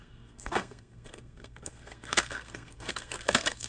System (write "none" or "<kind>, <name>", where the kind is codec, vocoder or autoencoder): codec, SNAC